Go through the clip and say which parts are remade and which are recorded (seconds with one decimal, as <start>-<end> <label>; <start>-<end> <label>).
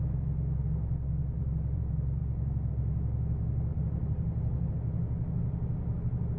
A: 0.0-1.2 recorded; 1.2-1.8 remade; 1.8-3.7 recorded; 3.7-4.7 remade; 4.7-6.4 recorded